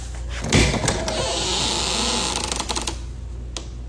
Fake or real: real